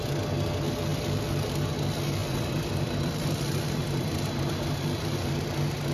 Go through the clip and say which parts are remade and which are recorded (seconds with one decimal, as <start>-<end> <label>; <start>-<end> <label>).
0.0-2.2 recorded; 2.2-5.4 remade; 5.4-5.9 recorded